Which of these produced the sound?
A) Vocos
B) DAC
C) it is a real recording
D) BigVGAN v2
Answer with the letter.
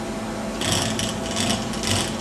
C